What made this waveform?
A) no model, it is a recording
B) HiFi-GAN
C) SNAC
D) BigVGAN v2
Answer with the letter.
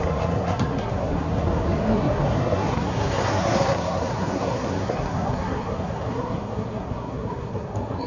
C